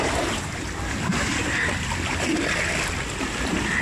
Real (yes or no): yes